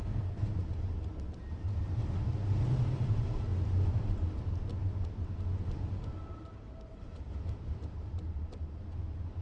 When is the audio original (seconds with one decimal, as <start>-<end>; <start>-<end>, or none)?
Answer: 0.5-9.4